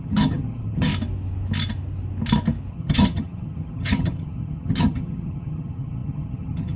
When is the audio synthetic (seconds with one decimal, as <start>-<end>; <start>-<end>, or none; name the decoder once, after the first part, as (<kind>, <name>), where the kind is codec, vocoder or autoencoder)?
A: 0.0-0.9 (vocoder, HiFi-GAN); 2.7-6.8